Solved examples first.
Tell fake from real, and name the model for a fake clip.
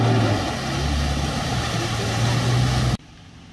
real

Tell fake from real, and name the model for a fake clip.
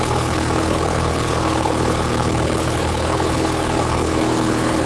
fake, codec, HILCodec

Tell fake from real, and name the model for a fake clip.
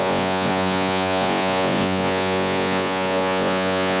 fake, vocoder, Vocos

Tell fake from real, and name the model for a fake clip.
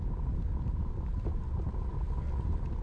real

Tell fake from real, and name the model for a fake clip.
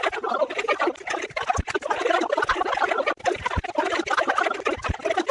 real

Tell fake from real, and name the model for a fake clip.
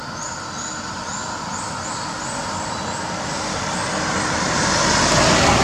real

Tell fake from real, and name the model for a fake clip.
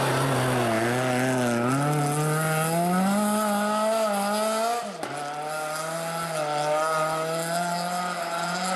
real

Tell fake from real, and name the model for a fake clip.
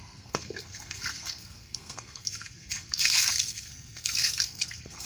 fake, codec, SNAC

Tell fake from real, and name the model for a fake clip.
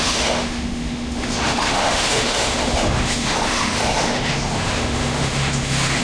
fake, autoencoder, DAC-VAE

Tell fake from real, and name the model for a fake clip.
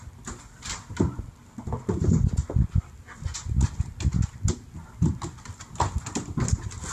real